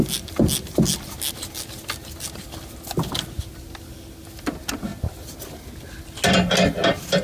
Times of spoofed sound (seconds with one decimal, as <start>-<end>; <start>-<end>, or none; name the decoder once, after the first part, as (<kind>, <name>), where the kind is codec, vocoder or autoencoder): none